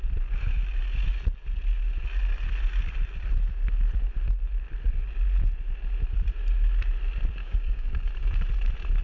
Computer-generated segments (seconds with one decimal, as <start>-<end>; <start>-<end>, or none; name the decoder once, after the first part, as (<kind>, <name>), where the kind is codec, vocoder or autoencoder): 7.4-8.1 (codec, DAC)